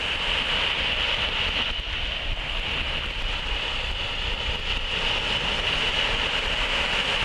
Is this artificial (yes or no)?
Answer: no